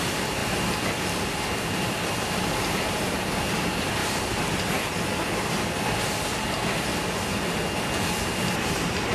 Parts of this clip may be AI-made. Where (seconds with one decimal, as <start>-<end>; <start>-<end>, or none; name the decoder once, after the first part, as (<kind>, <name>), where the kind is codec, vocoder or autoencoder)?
0.0-0.4 (vocoder, BigVGAN v2); 2.4-4.0; 8.5-9.1